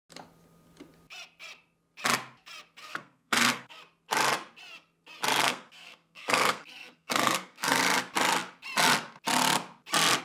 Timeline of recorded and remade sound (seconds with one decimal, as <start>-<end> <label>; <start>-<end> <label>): 0.0-2.8 recorded; 2.8-3.8 remade; 3.8-5.4 recorded; 5.4-7.8 remade; 7.8-10.2 recorded